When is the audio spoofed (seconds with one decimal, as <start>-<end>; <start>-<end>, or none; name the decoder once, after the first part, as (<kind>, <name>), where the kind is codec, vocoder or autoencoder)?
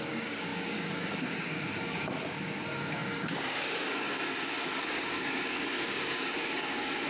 0.0-7.1 (codec, DAC)